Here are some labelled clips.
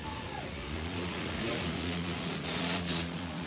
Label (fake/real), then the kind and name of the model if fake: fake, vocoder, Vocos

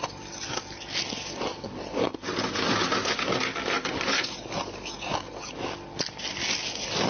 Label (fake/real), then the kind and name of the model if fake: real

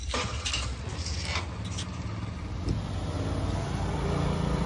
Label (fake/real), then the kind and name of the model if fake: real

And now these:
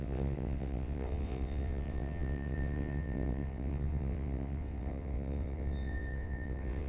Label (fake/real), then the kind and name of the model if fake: fake, vocoder, WaveNeXt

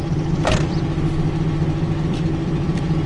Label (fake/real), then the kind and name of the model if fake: fake, vocoder, BigVGAN v2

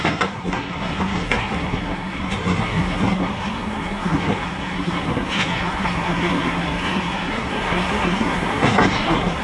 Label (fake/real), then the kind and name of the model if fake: fake, codec, SNAC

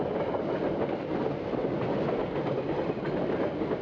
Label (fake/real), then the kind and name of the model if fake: real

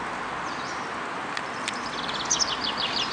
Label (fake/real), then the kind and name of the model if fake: real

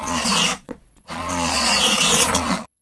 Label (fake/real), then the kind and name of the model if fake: fake, vocoder, Vocos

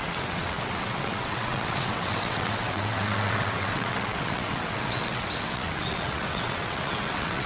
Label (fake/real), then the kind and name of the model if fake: fake, vocoder, WaveNeXt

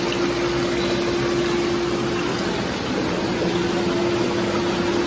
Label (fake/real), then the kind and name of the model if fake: real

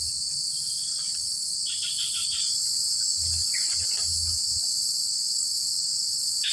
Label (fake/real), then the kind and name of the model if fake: real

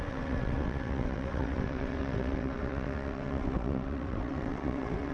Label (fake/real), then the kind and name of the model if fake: fake, vocoder, WaveNeXt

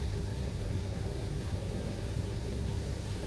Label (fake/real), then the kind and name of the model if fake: fake, codec, SNAC